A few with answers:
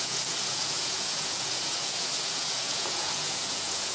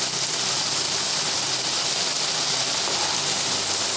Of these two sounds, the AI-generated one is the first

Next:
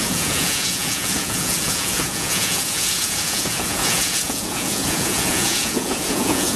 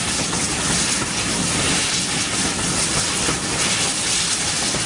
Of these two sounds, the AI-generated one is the first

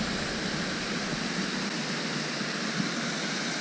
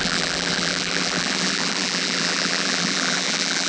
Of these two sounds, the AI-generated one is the second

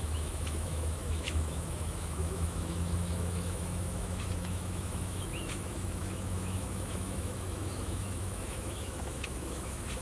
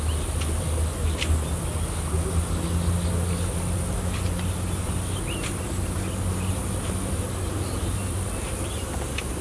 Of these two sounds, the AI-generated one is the first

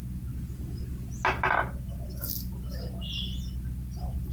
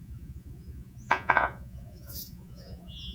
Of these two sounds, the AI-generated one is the second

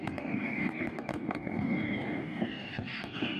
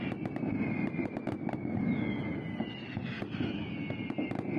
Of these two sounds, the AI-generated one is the first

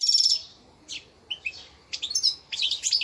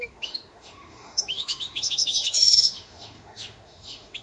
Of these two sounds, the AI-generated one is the second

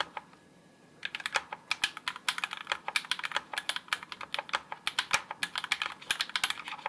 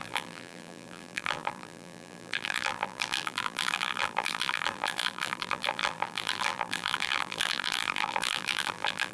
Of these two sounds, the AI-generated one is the second